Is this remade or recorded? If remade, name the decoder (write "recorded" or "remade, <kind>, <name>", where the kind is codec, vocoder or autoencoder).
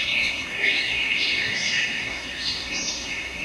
remade, codec, SNAC